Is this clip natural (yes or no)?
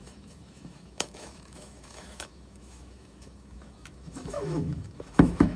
no